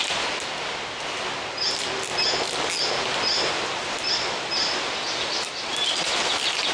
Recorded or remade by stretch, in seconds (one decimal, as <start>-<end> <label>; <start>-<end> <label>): 0.0-6.7 recorded